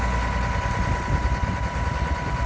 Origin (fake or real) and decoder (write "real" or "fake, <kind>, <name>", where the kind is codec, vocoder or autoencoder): real